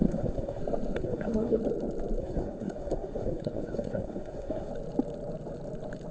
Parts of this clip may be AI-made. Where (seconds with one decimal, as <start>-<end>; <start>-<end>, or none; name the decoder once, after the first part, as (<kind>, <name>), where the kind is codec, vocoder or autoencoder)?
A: 0.0-0.6 (codec, SNAC); 1.0-1.6; 2.2-4.7